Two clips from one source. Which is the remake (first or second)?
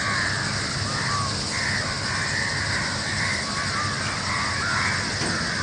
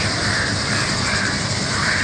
second